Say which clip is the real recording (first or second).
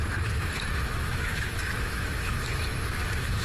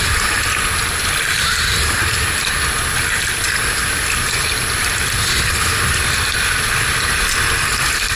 second